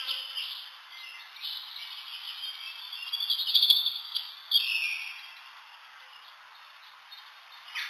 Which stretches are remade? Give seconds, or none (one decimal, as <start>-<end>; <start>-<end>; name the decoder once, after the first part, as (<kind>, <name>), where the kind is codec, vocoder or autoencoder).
3.5-4.3 (codec, SNAC)